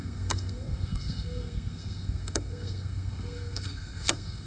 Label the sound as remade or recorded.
remade